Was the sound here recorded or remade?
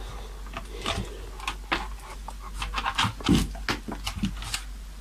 recorded